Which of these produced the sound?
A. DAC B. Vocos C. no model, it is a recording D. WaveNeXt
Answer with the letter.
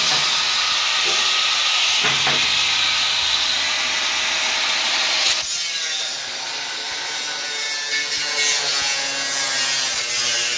C